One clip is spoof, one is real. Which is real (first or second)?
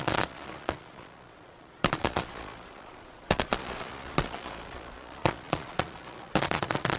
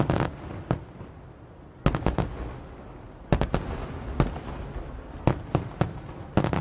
second